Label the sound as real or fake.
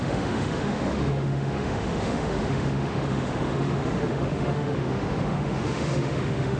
fake